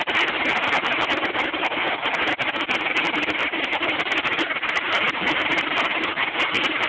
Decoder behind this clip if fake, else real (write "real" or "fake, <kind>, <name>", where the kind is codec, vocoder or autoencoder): real